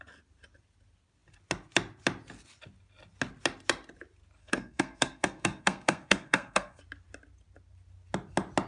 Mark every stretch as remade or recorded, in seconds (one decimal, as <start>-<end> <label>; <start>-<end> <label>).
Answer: 0.0-4.4 recorded; 4.4-6.8 remade; 6.8-8.7 recorded